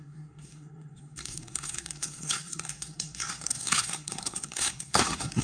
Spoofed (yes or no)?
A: yes